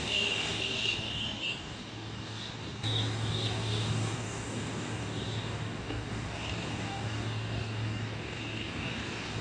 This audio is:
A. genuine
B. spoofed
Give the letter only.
B